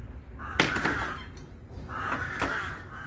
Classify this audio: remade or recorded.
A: recorded